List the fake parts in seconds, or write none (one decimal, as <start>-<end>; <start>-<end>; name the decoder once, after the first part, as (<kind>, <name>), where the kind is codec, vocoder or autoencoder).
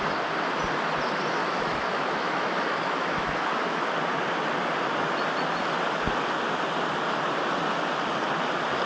1.4-3.8 (autoencoder, DAC-VAE)